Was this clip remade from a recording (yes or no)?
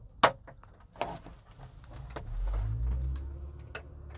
no